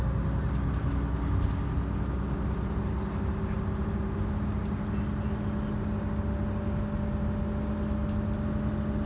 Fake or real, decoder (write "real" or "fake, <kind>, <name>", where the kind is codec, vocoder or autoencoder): real